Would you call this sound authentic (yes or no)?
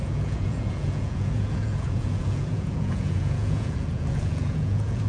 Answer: no